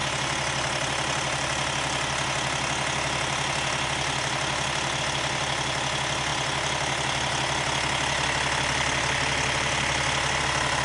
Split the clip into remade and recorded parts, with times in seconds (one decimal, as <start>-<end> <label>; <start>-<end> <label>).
0.0-10.8 recorded